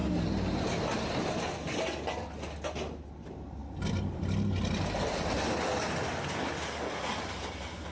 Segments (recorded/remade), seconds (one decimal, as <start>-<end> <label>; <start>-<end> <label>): 0.0-7.9 recorded